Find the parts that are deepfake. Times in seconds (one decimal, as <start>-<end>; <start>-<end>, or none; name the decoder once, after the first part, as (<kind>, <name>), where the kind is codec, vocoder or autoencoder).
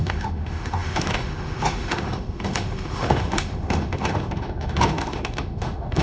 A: 0.0-6.0 (autoencoder, DAC-VAE)